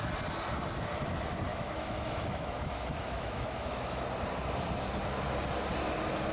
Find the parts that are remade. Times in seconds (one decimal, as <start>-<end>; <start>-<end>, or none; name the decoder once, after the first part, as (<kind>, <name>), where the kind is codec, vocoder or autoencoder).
1.5-4.0 (autoencoder, DAC-VAE)